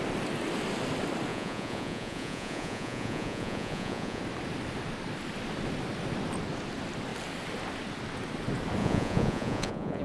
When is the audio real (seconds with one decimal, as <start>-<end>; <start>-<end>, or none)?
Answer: 0.0-1.3; 4.2-8.8